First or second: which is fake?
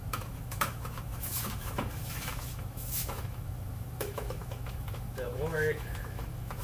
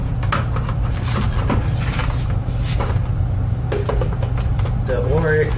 first